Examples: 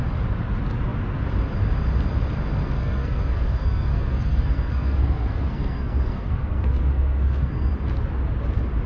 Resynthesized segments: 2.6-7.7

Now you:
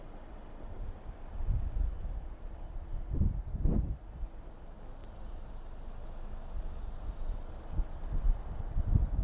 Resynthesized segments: none

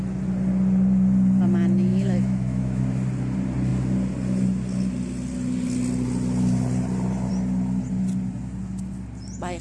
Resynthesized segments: 1.9-2.8

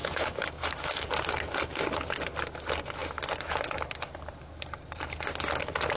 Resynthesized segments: 0.0-1.1

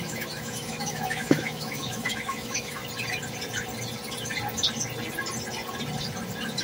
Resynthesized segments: 0.0-2.8

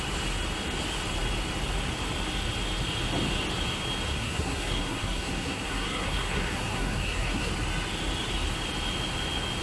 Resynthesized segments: 4.1-7.5